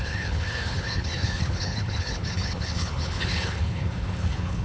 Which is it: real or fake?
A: fake